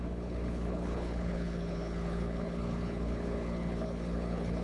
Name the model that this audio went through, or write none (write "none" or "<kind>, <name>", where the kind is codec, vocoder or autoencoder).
codec, HILCodec